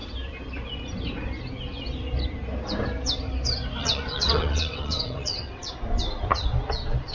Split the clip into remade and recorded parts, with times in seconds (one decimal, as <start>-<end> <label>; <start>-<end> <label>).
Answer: 0.0-3.8 recorded; 3.8-5.7 remade; 5.7-7.1 recorded